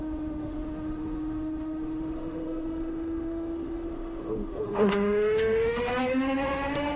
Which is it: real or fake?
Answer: fake